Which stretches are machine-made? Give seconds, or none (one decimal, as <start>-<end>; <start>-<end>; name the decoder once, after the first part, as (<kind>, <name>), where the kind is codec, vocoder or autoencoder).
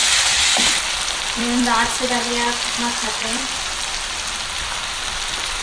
0.0-1.9 (vocoder, BigVGAN v2); 3.0-5.6